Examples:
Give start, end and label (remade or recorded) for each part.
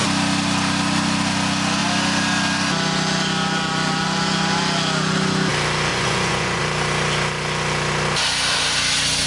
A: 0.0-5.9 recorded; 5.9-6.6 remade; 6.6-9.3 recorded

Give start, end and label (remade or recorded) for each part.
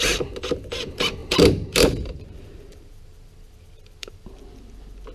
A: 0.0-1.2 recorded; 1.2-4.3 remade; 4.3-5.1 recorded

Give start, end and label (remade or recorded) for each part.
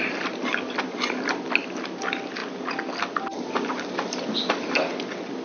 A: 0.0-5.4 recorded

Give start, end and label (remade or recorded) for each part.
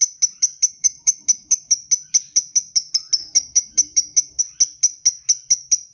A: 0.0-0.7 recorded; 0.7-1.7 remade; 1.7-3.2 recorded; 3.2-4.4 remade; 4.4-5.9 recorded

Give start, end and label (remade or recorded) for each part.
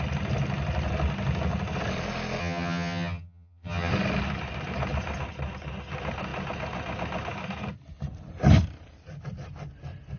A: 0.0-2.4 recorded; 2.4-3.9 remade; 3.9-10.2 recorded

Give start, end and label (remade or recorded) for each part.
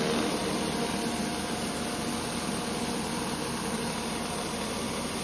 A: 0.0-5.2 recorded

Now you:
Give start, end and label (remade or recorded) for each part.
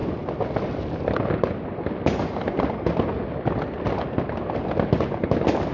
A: 0.0-5.7 recorded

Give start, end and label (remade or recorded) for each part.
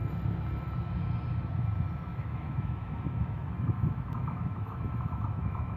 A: 0.0-2.1 recorded; 2.1-5.8 remade